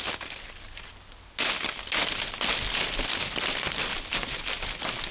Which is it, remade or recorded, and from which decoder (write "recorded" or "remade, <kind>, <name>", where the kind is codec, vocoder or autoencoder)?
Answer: recorded